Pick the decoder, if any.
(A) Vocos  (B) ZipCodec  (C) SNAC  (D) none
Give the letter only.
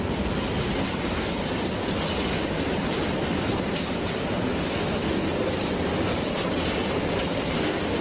D